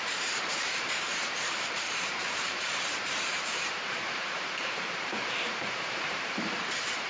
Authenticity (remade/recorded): remade